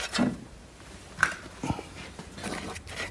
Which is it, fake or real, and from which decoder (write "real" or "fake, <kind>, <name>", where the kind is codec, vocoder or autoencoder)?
real